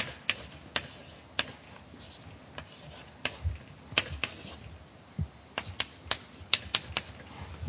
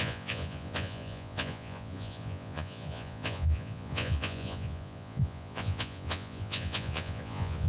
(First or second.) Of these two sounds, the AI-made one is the second